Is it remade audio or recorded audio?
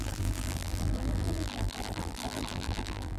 remade